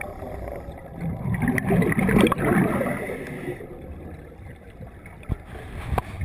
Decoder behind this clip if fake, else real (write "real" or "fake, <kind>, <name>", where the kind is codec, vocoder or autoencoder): real